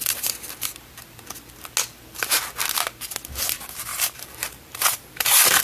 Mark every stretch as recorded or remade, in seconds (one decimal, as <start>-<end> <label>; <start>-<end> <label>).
0.0-3.9 recorded; 3.9-5.6 remade